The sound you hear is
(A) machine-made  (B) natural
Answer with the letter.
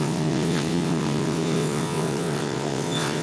A